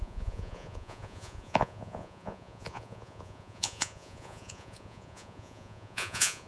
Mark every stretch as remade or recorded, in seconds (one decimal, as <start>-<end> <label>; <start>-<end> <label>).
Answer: 0.0-6.5 remade